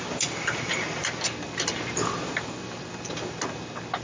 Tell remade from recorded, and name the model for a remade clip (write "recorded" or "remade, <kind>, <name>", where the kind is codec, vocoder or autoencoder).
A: recorded